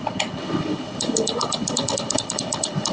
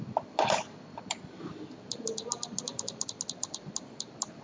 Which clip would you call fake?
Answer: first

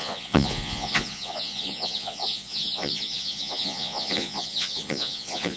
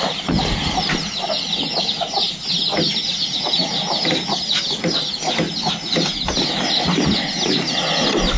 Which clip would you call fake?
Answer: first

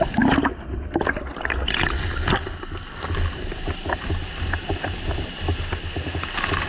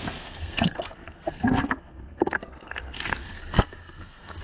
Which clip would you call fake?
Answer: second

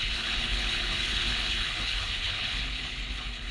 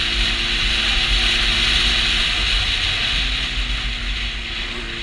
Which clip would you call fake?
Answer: first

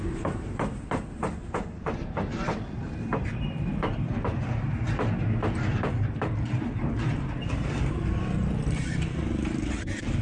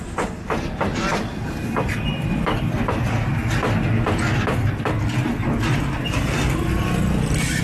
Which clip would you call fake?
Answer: first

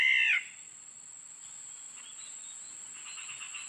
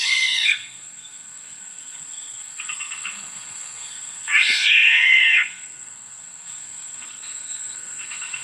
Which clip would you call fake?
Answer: second